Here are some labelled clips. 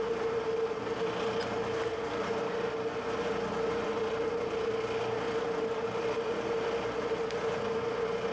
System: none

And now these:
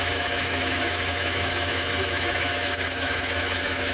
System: autoencoder, DAC-VAE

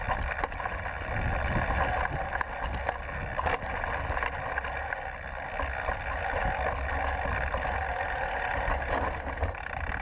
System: none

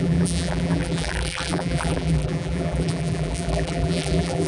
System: vocoder, BigVGAN v2